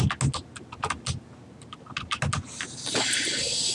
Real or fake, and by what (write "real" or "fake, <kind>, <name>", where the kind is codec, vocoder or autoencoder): real